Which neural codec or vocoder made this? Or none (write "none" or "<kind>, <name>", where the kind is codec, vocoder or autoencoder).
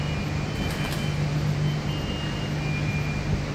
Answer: none